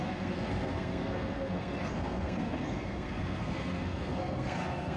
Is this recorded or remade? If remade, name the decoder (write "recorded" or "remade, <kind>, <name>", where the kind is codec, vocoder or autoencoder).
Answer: remade, codec, SNAC